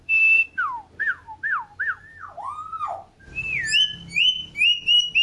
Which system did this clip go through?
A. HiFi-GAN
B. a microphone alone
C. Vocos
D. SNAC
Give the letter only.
B